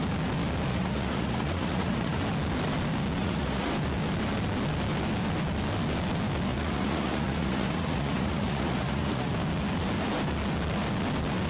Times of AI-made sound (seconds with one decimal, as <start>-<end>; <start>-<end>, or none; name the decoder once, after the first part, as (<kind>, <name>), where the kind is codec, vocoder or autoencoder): 0.7-2.2 (vocoder, Vocos); 3.2-3.7; 6.5-9.3